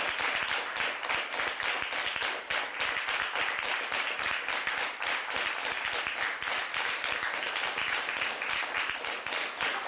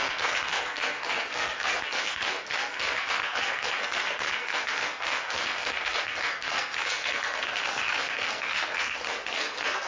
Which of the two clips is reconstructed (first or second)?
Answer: second